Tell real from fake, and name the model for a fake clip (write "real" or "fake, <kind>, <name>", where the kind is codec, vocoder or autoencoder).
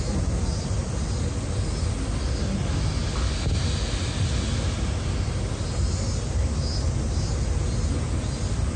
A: real